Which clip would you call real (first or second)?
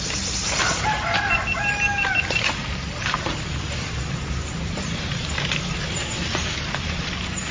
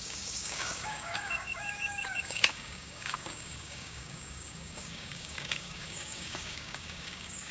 first